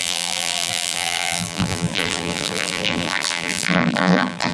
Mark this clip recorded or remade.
remade